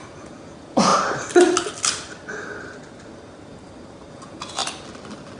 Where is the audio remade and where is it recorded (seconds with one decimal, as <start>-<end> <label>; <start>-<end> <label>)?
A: 0.0-0.9 remade; 0.9-4.1 recorded; 4.1-4.6 remade; 4.6-5.4 recorded